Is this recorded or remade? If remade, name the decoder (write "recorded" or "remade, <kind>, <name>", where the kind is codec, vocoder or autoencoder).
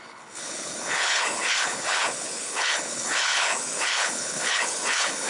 remade, codec, HILCodec